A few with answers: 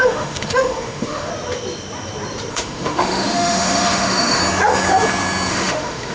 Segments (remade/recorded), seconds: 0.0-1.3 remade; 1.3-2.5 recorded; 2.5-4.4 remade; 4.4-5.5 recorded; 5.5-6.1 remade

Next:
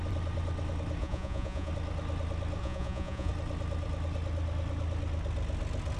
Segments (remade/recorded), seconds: 0.0-1.0 recorded; 1.0-1.7 remade; 1.7-2.6 recorded; 2.6-3.3 remade; 3.3-6.0 recorded

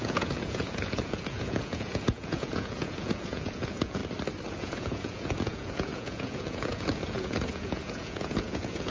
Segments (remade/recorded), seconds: 0.0-4.0 remade; 4.0-4.5 recorded; 4.5-8.9 remade

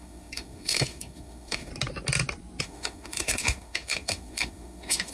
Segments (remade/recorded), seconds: 0.0-1.7 remade; 1.7-2.6 recorded; 2.6-5.1 remade